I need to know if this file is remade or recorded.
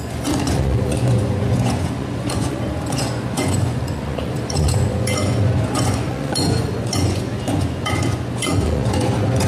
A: remade